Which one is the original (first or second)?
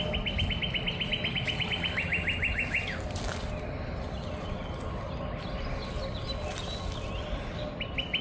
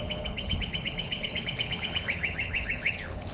first